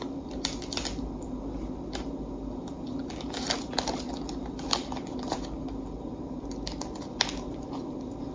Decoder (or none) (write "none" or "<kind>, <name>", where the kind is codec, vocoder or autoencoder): none